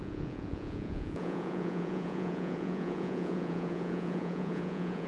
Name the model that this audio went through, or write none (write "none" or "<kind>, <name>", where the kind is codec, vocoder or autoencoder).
vocoder, Vocos